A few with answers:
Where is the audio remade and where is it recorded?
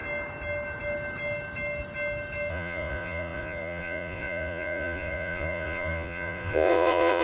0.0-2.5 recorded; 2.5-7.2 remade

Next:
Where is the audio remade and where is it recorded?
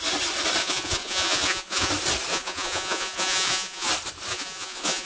0.0-0.6 recorded; 0.6-1.9 remade; 1.9-2.3 recorded; 2.3-3.9 remade; 3.9-4.3 recorded; 4.3-5.1 remade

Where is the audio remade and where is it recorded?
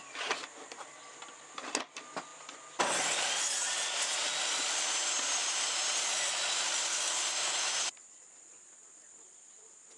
0.0-2.3 recorded; 2.3-3.4 remade; 3.4-5.0 recorded; 5.0-9.3 remade; 9.3-10.0 recorded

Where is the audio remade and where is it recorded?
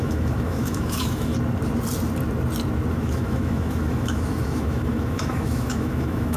0.0-1.3 remade; 1.3-2.9 recorded; 2.9-6.4 remade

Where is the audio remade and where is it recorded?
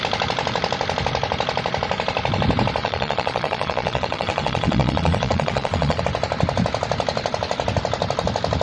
0.0-2.8 recorded; 2.8-6.0 remade; 6.0-8.6 recorded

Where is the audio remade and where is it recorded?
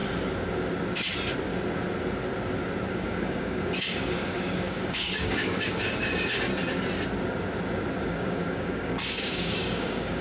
0.0-2.9 recorded; 2.9-6.5 remade; 6.5-8.1 recorded; 8.1-10.2 remade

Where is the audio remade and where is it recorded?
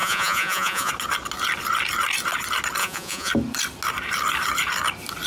0.0-0.9 remade; 0.9-2.8 recorded; 2.8-3.3 remade; 3.3-5.3 recorded